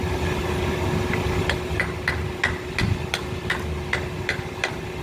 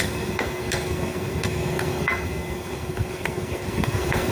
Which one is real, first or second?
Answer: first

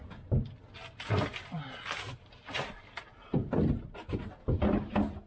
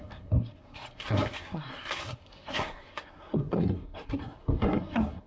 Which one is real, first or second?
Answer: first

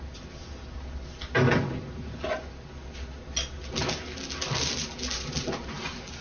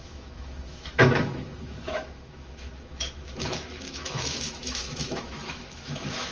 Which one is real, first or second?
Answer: first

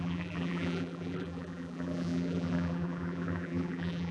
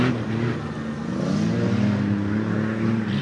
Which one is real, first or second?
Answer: second